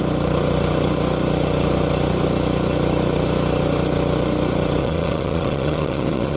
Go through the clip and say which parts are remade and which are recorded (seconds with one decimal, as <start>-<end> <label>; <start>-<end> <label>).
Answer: 0.0-4.8 recorded; 4.8-6.4 remade